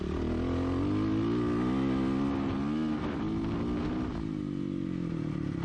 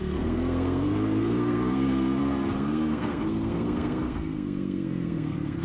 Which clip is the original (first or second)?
first